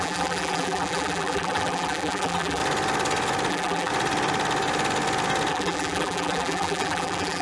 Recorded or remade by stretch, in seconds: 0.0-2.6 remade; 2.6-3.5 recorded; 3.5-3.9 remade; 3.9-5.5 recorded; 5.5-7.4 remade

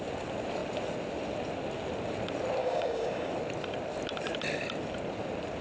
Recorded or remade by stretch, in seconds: 0.0-2.6 recorded; 2.6-3.3 remade; 3.3-5.6 recorded

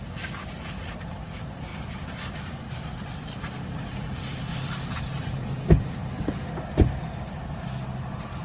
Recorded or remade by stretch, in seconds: 0.0-8.4 recorded

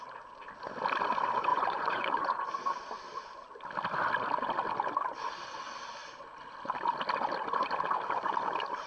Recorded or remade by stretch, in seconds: 0.0-1.5 recorded; 1.5-2.5 remade; 2.5-8.9 recorded

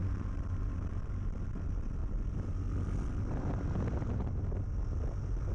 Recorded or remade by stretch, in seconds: 0.0-1.0 remade; 1.0-5.5 recorded